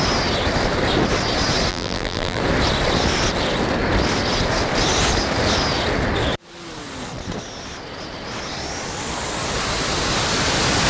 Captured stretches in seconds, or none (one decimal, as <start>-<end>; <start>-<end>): 0.0-1.7; 2.4-10.9